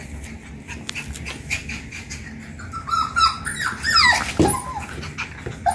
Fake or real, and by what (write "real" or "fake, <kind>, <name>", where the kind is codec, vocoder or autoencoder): real